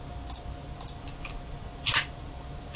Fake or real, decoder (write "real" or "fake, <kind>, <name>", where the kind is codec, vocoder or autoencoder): real